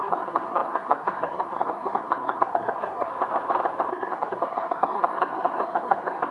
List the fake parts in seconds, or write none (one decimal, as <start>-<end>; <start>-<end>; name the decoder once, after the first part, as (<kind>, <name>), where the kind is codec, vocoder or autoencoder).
0.0-3.1 (codec, SNAC); 3.9-6.3